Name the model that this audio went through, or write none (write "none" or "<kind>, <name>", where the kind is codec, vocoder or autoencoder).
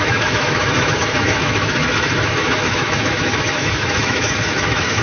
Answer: autoencoder, DAC-VAE